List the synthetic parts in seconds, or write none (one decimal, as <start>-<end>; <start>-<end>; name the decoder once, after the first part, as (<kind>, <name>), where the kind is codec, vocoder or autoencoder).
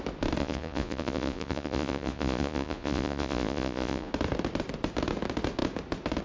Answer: 0.4-4.1 (vocoder, Vocos)